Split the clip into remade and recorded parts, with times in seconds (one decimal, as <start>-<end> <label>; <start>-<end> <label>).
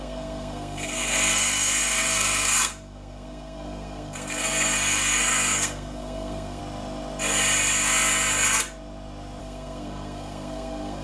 0.0-6.6 remade; 6.6-9.4 recorded; 9.4-11.0 remade